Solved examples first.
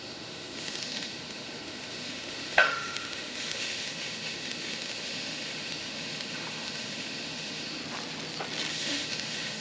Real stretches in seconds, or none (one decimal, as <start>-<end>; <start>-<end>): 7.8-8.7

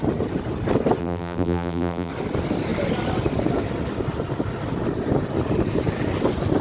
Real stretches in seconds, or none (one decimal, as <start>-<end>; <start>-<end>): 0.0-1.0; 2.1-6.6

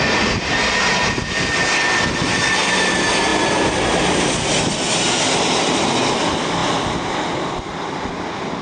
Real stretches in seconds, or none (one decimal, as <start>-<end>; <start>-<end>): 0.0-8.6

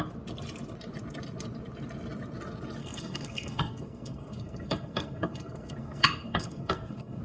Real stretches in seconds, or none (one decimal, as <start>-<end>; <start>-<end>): 0.0-2.8

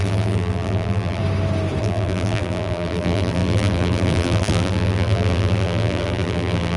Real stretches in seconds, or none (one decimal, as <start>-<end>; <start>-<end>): 1.2-1.8